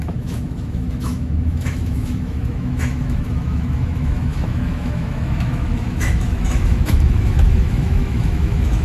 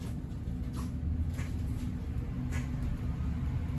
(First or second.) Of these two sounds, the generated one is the first